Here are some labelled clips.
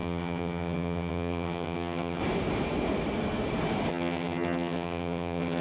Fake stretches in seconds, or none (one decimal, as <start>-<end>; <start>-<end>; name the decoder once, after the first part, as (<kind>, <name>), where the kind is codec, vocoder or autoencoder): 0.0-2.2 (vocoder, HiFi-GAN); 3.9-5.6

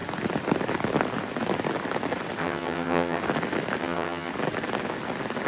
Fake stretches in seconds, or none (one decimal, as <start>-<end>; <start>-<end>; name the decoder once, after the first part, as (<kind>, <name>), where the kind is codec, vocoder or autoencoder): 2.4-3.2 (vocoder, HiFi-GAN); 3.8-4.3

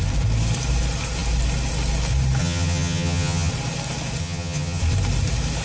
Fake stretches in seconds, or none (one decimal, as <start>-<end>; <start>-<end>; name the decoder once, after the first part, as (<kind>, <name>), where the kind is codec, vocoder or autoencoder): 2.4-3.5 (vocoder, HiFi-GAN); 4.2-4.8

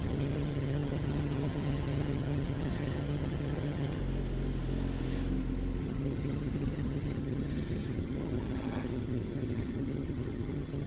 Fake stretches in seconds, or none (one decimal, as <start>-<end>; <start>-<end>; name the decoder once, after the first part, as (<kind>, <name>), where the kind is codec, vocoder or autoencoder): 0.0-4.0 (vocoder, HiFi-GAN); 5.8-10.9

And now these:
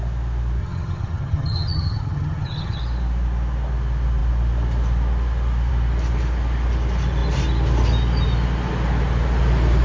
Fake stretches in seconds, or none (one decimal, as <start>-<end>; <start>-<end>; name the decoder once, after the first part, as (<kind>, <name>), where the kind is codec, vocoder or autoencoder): 0.6-2.8 (vocoder, HiFi-GAN)

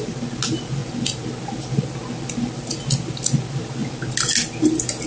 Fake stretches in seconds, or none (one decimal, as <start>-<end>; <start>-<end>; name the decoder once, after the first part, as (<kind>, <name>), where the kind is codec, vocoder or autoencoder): none

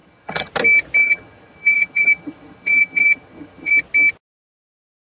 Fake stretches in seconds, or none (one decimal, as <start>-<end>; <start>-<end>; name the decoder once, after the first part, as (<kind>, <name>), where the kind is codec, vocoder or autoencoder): 0.0-0.5 (vocoder, HiFi-GAN); 1.0-3.7